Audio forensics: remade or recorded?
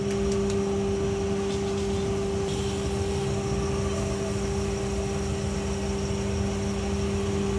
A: recorded